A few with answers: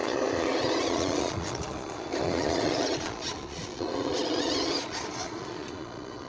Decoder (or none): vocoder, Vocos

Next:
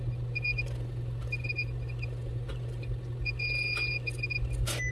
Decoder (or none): none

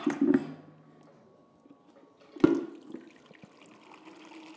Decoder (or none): none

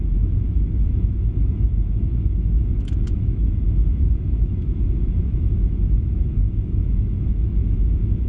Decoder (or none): autoencoder, DAC-VAE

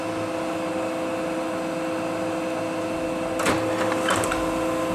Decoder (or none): none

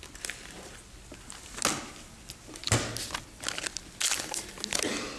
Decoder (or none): none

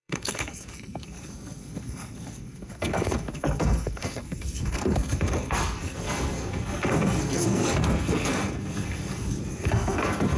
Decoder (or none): codec, SNAC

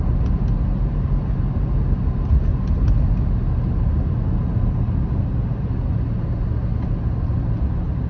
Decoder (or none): none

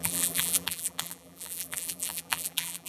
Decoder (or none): vocoder, BigVGAN v2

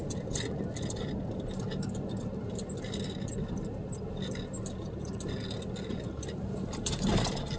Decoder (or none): none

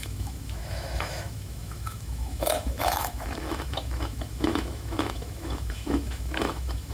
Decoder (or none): autoencoder, DAC-VAE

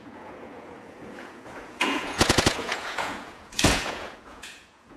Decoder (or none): vocoder, Vocos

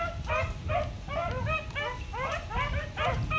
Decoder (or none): none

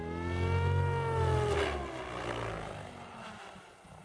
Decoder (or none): none